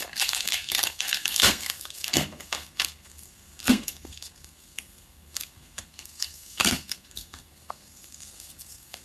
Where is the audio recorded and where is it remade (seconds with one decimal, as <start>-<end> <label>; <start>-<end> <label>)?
0.0-9.0 remade